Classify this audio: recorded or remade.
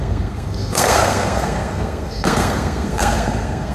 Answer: remade